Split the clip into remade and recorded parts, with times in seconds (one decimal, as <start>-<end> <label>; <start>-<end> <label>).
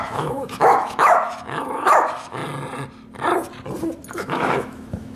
0.0-2.4 remade; 2.4-4.1 recorded; 4.1-5.2 remade